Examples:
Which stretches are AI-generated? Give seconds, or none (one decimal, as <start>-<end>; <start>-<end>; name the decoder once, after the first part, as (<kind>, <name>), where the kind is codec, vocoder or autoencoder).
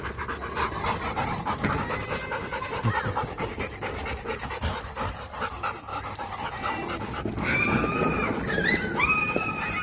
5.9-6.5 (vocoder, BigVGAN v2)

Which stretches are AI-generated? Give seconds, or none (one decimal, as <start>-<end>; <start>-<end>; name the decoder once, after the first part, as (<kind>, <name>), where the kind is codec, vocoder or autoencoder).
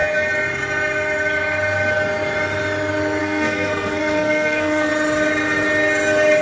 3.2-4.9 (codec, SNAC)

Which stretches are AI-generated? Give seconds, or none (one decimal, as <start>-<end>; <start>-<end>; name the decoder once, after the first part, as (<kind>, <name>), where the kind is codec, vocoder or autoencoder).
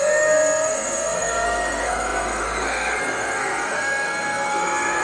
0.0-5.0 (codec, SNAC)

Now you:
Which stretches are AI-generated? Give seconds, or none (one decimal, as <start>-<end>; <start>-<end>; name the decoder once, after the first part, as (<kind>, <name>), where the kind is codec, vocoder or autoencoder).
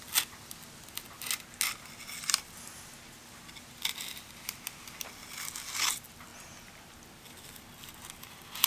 none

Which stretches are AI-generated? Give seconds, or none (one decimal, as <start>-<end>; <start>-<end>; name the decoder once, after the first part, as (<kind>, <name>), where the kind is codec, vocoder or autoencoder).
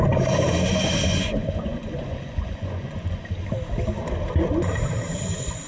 1.1-3.2 (vocoder, Vocos)